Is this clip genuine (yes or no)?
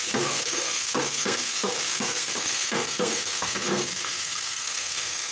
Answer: no